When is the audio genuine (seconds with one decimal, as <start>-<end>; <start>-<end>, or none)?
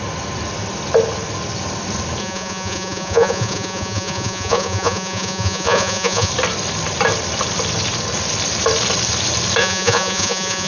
0.0-2.2; 6.3-9.6